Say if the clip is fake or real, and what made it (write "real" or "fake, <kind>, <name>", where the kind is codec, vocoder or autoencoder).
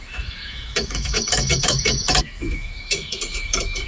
fake, autoencoder, DAC-VAE